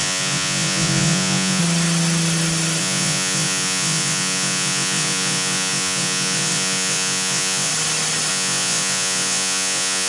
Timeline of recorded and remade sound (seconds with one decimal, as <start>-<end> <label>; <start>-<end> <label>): 0.0-1.6 remade; 1.6-2.8 recorded; 2.8-7.7 remade; 7.7-8.3 recorded; 8.3-10.1 remade